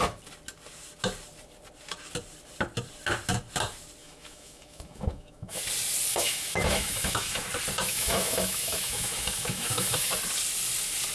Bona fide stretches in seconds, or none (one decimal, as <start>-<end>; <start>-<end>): 0.0-4.0; 5.6-6.1; 7.5-7.9; 10.1-11.1